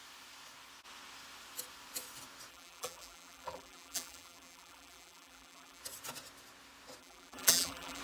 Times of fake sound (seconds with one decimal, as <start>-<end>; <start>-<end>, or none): 2.5-5.8; 7.0-8.0